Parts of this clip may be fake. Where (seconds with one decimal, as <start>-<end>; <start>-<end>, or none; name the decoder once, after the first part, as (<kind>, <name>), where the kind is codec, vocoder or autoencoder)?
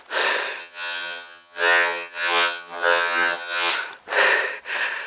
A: 0.6-3.7 (vocoder, HiFi-GAN)